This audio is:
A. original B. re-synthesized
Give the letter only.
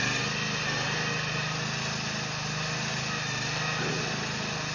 A